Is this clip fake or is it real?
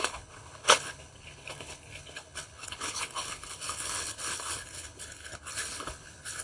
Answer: fake